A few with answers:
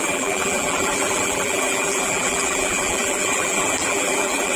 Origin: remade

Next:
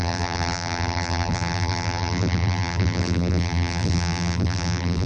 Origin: remade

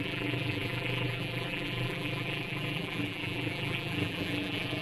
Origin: remade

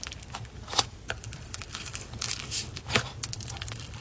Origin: remade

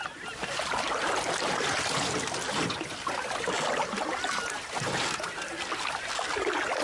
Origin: recorded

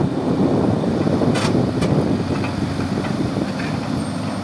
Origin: recorded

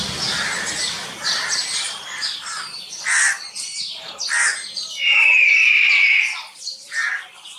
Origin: recorded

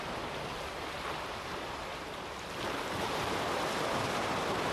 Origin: recorded